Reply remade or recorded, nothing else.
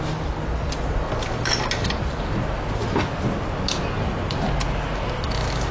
recorded